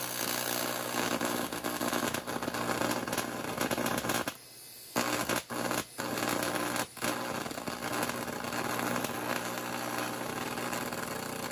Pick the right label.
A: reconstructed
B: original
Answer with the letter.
B